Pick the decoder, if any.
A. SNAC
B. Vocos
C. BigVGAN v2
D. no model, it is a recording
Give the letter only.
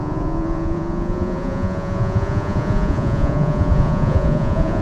B